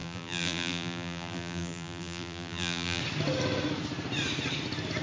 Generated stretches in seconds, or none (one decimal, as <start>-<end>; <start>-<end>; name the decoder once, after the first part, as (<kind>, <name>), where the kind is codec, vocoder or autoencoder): 0.0-3.0 (vocoder, BigVGAN v2)